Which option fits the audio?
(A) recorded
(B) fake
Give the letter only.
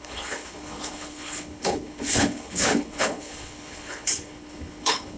B